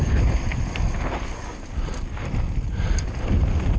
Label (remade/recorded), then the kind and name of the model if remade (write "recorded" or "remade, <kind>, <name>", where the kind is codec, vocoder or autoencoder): recorded